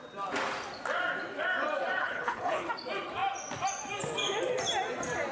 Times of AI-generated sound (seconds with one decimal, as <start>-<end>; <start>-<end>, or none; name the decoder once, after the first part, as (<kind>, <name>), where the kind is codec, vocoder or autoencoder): 2.0-2.7 (codec, HILCodec)